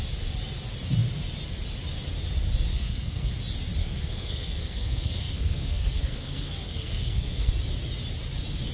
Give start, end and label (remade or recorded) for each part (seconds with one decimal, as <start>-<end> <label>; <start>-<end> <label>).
0.0-2.7 recorded; 2.7-3.3 remade; 3.3-3.8 recorded; 3.8-7.5 remade; 7.5-8.7 recorded